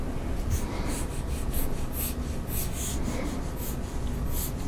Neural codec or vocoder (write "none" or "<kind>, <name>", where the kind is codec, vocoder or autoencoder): none